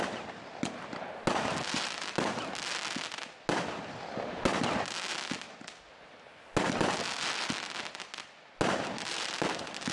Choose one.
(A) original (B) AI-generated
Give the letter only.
A